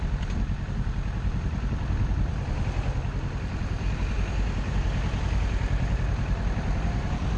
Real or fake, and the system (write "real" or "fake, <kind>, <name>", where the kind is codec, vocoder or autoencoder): real